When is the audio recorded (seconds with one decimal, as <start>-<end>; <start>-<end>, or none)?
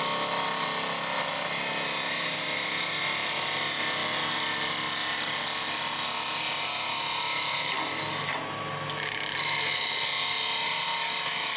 0.0-11.6